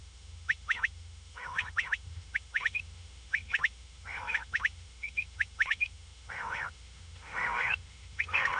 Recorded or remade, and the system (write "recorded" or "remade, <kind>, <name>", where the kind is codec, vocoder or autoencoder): remade, autoencoder, DAC-VAE